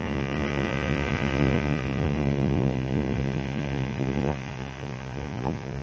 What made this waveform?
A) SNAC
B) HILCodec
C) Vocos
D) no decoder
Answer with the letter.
C